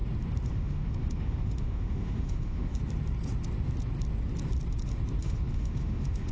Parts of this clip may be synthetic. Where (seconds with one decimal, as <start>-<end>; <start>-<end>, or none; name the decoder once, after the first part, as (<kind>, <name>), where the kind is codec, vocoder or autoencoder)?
0.5-2.7 (autoencoder, DAC-VAE); 5.2-6.3